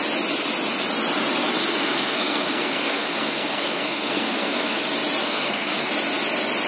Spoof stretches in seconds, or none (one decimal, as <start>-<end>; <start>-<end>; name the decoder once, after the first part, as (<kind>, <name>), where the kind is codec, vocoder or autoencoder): 1.8-4.8 (codec, SNAC); 5.2-5.9

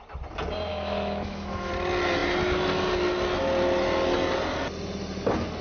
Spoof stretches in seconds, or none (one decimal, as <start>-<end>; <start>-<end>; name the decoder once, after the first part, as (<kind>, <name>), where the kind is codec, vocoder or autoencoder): 0.7-1.7 (autoencoder, DAC-VAE)

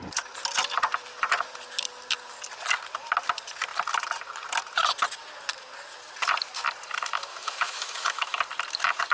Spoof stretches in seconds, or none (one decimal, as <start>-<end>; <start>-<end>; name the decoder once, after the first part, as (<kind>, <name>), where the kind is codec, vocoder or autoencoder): 7.3-8.4 (autoencoder, DAC-VAE)

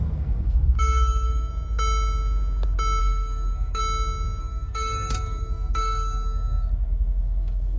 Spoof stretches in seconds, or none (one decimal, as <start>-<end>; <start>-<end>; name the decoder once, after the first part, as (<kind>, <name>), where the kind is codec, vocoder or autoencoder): 0.0-1.5 (codec, SNAC); 3.0-3.8; 4.4-7.8